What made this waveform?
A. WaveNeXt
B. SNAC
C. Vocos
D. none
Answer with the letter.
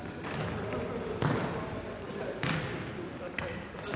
D